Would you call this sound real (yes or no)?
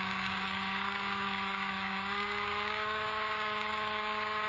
no